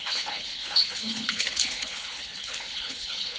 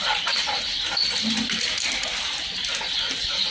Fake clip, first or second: first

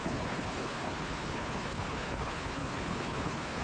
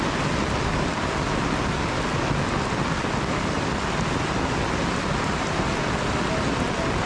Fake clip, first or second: first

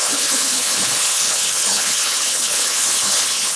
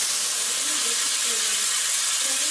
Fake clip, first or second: first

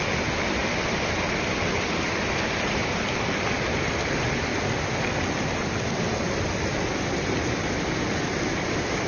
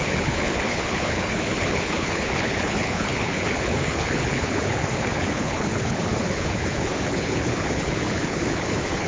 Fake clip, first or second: second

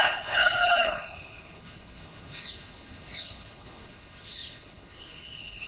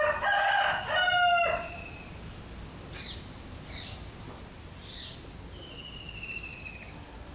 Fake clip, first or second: first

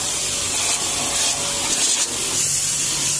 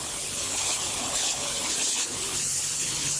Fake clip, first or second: second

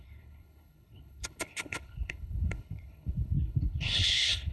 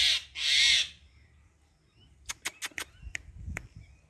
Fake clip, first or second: first